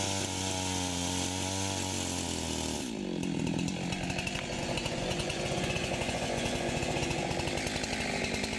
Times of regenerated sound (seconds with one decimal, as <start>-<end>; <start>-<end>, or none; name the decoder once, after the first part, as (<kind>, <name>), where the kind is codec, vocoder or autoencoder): 4.5-7.3 (vocoder, Vocos)